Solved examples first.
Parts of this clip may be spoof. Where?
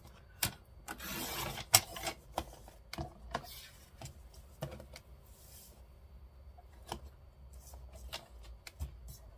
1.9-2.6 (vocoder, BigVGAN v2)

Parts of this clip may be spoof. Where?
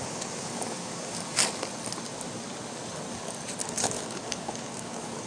0.0-1.4 (codec, DAC); 3.6-5.3